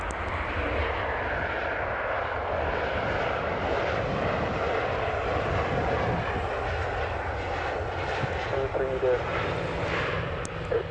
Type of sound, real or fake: real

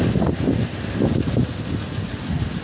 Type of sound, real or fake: real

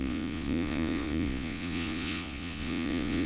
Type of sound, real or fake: fake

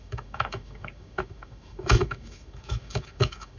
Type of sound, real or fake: fake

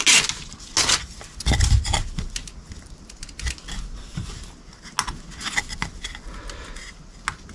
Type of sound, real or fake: real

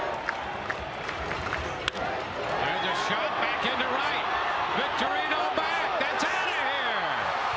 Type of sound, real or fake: real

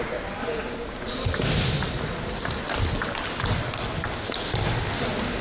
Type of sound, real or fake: real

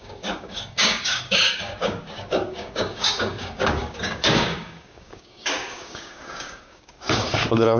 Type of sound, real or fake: fake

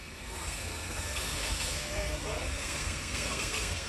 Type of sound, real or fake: fake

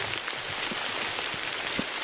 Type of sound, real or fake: real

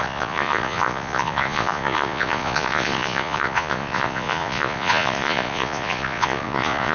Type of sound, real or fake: fake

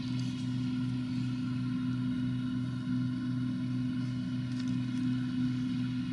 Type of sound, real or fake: real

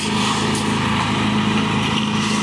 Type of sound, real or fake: real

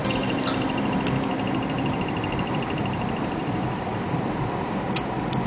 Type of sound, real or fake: fake